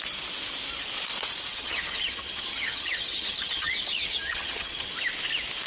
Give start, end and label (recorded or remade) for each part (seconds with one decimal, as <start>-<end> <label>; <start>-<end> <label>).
0.0-1.5 recorded; 1.5-4.9 remade; 4.9-5.7 recorded